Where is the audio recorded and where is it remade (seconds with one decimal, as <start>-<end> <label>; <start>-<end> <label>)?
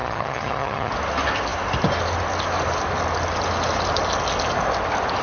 0.0-0.9 remade; 0.9-5.2 recorded